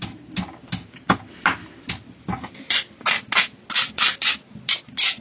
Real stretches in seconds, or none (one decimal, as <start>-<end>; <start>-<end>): 0.0-5.2